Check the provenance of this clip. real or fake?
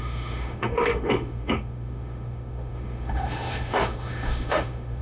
fake